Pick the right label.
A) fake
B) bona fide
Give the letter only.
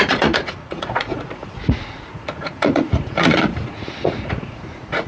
A